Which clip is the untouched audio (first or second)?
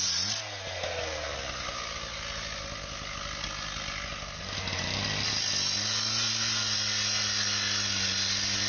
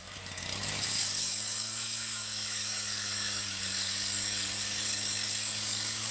first